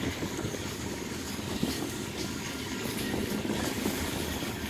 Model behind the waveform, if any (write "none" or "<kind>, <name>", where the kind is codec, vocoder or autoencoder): codec, DAC